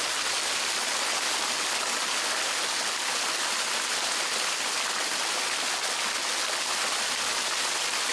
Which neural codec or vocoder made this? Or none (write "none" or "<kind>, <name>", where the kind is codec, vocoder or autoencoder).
none